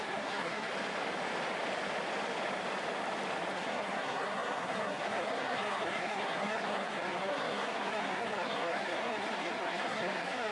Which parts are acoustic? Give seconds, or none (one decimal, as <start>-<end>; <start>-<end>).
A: 0.7-3.5